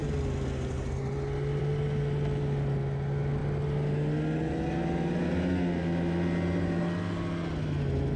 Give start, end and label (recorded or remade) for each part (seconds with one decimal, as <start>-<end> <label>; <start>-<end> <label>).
0.0-8.2 recorded